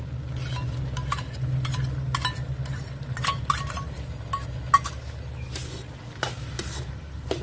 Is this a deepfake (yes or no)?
no